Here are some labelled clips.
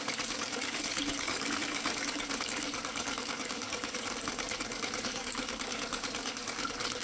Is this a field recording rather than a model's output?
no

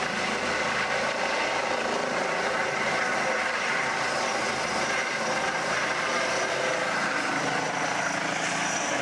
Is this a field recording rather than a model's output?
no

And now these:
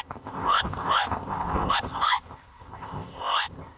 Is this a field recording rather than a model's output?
no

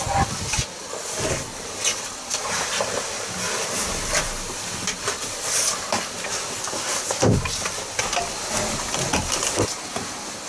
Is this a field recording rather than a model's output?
yes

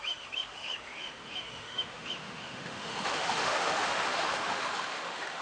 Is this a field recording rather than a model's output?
no